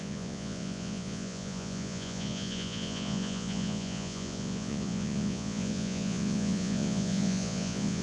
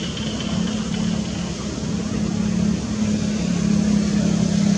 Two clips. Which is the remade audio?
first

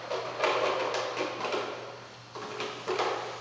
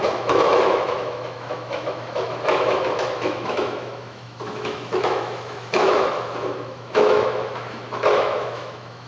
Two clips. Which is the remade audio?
second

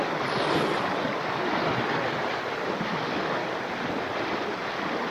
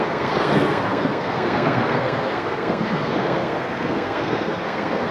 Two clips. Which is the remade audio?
second